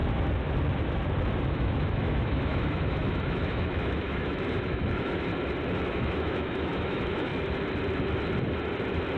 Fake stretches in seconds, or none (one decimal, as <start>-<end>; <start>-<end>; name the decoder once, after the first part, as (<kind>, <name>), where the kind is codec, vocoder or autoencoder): 1.5-5.3 (autoencoder, DAC-VAE); 5.9-7.3